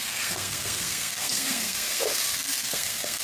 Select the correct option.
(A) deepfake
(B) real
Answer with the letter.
A